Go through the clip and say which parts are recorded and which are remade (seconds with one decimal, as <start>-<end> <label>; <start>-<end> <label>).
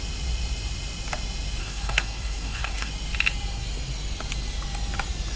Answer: 0.0-1.6 recorded; 1.6-2.9 remade; 2.9-5.4 recorded